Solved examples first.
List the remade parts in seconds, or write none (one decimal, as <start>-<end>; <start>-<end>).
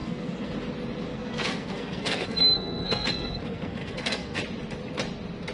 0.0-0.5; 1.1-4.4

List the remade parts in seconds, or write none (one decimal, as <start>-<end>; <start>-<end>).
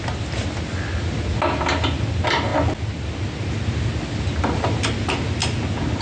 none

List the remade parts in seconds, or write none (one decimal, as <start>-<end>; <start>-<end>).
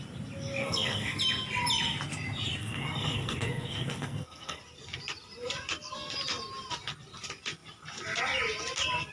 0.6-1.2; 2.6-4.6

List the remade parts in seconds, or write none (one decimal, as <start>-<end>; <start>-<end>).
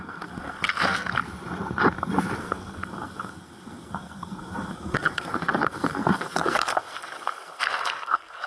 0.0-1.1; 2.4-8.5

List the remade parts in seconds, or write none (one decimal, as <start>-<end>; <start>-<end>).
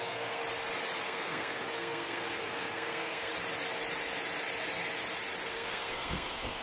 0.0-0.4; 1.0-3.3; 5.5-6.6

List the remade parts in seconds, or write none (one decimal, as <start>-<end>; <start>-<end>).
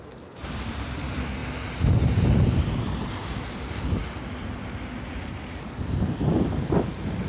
none